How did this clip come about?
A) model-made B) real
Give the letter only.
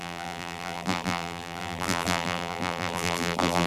A